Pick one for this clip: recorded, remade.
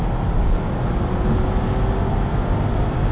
recorded